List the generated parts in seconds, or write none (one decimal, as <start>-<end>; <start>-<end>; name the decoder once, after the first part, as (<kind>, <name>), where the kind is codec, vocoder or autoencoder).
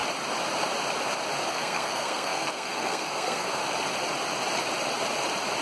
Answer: 1.5-3.6 (codec, SNAC)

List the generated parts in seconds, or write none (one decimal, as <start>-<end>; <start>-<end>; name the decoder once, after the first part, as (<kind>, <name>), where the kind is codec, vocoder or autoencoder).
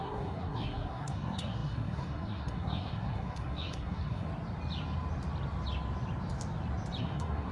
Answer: 0.0-4.3 (codec, SNAC); 7.0-7.5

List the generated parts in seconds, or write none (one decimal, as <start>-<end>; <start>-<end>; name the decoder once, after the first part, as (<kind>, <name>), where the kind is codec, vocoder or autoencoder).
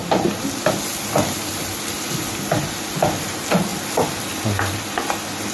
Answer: none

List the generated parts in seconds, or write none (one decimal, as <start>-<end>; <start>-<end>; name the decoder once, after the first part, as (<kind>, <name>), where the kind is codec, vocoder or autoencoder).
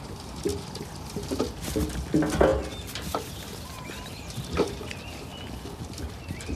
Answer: none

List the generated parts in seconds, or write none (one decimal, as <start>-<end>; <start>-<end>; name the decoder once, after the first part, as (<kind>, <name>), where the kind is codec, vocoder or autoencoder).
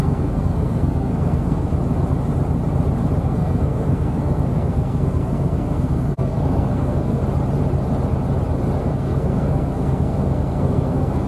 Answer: 0.0-1.7 (codec, SNAC); 3.2-7.2; 8.8-11.3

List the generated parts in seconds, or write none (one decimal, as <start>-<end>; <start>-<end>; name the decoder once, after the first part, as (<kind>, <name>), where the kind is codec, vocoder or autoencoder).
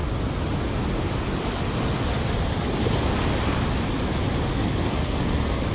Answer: 4.5-5.7 (codec, SNAC)